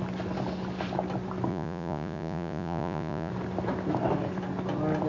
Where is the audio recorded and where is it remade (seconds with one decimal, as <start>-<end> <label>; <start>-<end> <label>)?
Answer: 0.0-1.5 recorded; 1.5-3.3 remade; 3.3-5.1 recorded